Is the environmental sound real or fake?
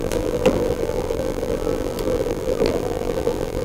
fake